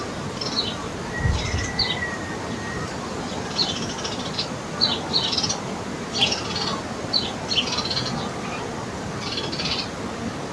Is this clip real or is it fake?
real